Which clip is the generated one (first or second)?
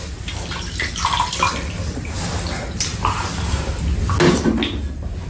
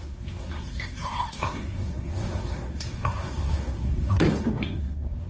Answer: second